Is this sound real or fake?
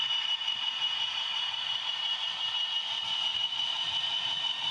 fake